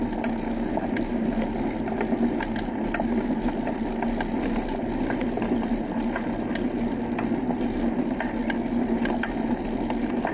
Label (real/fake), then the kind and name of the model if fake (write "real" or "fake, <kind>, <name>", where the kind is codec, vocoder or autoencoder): real